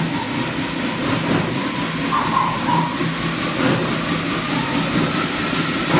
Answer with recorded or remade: recorded